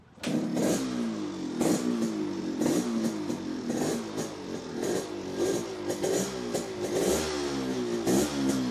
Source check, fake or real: real